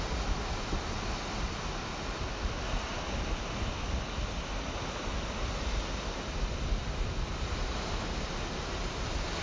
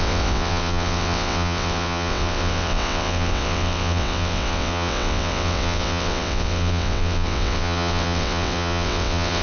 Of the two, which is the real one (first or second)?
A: first